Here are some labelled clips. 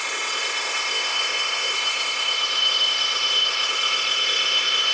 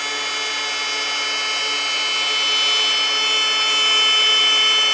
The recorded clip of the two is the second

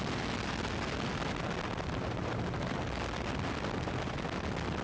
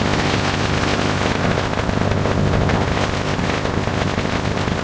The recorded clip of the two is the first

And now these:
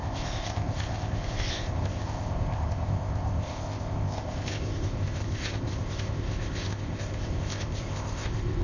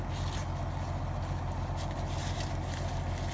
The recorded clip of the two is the second